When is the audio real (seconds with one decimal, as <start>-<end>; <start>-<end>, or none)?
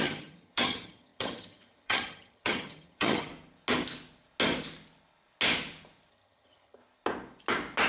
3.3-6.1; 6.8-7.9